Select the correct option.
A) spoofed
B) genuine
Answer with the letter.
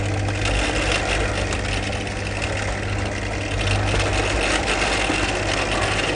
B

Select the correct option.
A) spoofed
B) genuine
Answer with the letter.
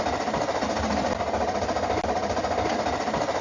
B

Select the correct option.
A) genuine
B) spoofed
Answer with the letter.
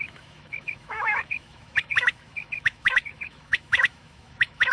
B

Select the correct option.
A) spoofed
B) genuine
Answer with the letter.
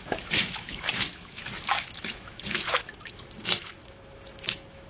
A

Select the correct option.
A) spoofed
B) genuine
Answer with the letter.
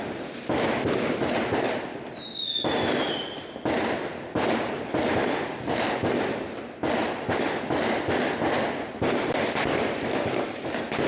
B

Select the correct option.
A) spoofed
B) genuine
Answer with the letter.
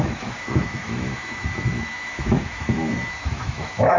A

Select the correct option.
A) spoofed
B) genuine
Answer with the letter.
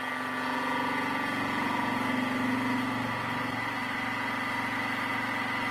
B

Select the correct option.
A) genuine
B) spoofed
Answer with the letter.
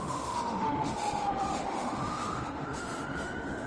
B